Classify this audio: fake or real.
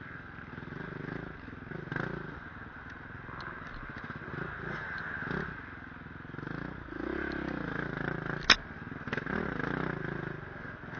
real